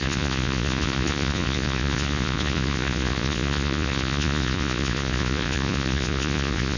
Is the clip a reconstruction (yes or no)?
yes